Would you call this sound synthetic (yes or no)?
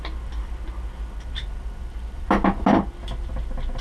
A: no